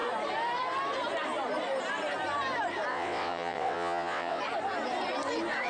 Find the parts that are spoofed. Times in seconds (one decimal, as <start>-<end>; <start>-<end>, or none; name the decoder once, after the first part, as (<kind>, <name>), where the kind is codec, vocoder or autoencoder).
2.9-4.4 (vocoder, WaveNeXt)